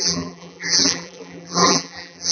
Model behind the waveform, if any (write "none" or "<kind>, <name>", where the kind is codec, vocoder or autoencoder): vocoder, BigVGAN v2